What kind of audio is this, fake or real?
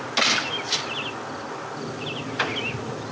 real